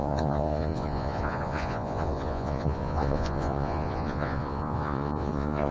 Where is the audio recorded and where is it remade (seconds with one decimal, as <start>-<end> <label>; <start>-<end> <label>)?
0.0-5.7 remade